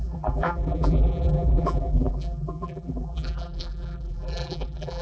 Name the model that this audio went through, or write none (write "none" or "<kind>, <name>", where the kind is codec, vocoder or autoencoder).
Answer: vocoder, BigVGAN v2